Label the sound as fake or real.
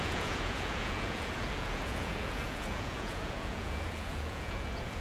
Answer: fake